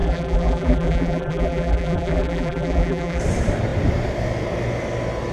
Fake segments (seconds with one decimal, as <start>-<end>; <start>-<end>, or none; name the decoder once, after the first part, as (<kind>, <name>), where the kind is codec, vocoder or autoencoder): 0.0-3.2 (vocoder, BigVGAN v2)